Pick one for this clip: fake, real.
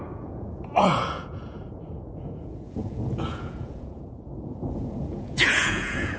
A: fake